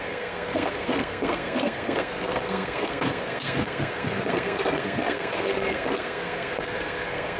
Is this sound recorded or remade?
remade